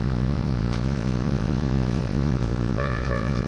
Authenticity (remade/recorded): remade